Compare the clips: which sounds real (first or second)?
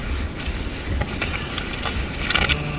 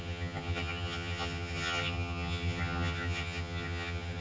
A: first